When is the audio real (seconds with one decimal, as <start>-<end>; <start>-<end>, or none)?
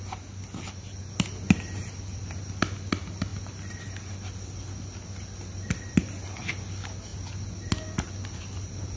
0.0-9.0